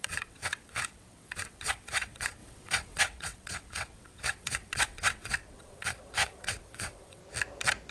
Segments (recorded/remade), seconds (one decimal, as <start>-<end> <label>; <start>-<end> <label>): 0.0-7.2 remade; 7.2-7.9 recorded